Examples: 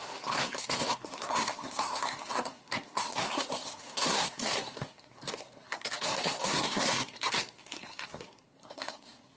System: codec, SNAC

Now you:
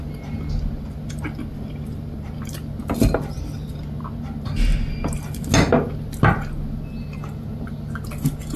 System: none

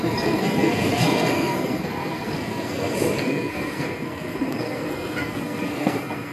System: codec, SNAC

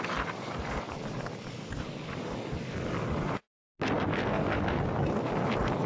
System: none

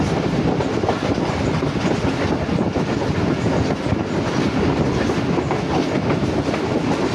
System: none